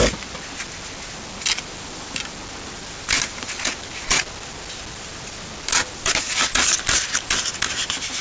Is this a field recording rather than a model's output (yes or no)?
yes